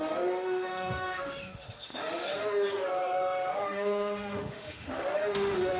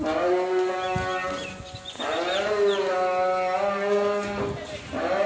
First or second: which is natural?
second